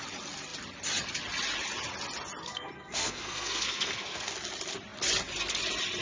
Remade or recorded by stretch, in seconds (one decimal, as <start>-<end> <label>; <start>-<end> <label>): 0.0-2.4 recorded; 2.4-4.3 remade; 4.3-6.0 recorded